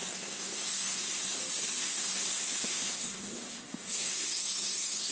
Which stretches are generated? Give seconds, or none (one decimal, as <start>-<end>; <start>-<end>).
0.0-1.4; 1.8-5.1